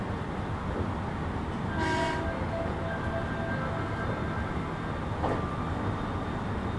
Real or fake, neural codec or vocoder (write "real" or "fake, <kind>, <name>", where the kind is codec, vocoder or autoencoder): real